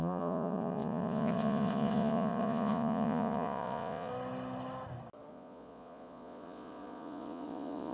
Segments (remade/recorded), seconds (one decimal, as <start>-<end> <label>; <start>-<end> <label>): 0.0-4.1 remade; 4.1-5.3 recorded; 5.3-7.9 remade